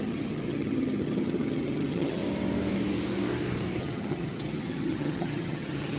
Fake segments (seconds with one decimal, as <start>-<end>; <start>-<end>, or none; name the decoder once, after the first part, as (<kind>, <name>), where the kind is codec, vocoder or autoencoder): 0.0-2.2 (vocoder, HiFi-GAN); 3.8-6.0